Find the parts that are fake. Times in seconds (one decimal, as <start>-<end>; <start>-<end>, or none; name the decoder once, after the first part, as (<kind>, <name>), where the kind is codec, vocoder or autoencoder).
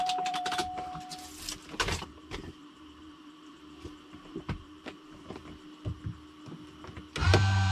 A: 0.0-0.6 (vocoder, BigVGAN v2); 1.8-5.4; 7.3-7.7